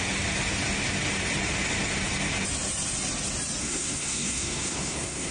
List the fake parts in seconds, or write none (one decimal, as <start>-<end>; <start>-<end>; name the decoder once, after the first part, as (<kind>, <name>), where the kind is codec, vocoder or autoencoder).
3.6-5.3 (codec, SNAC)